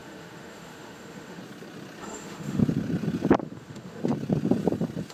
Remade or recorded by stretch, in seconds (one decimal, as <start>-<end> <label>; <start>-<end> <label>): 0.0-1.4 remade; 1.4-2.0 recorded; 2.0-2.6 remade; 2.6-3.4 recorded; 3.4-4.0 remade; 4.0-5.1 recorded